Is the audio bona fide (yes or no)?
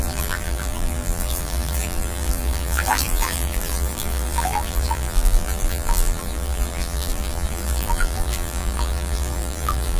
no